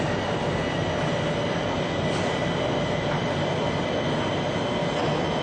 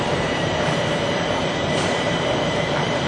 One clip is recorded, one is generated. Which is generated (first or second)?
second